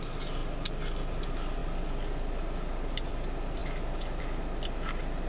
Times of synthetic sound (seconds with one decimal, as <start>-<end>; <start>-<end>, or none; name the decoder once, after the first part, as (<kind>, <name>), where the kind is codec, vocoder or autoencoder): none